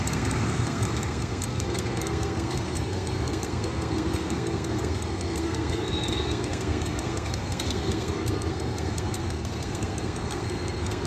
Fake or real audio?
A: fake